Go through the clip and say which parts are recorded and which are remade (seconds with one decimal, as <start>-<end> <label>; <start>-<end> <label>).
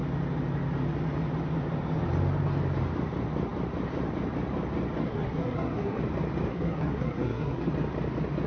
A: 0.0-5.0 recorded; 5.0-6.0 remade; 6.0-6.5 recorded; 6.5-7.7 remade; 7.7-8.5 recorded